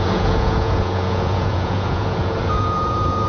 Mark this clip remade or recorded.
remade